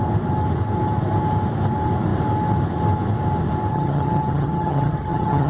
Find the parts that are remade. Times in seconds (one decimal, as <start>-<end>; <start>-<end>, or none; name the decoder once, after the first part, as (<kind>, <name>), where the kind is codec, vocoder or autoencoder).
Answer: 3.7-5.5 (vocoder, HiFi-GAN)